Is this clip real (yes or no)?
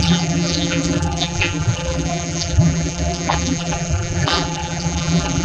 no